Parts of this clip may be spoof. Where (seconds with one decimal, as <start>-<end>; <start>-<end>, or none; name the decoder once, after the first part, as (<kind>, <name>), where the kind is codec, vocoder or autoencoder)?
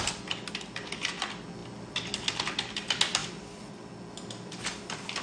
none